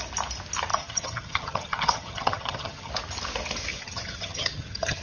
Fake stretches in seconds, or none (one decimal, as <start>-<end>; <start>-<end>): 0.7-2.9; 3.7-5.0